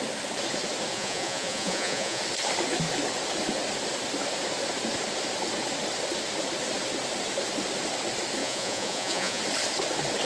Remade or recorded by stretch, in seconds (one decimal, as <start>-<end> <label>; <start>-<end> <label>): 0.0-0.9 recorded; 0.9-2.2 remade; 2.2-8.4 recorded; 8.4-9.4 remade; 9.4-10.2 recorded